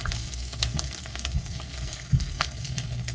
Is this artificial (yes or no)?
yes